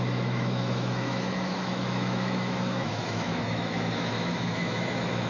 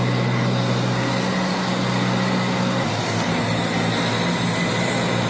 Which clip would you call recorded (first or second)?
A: second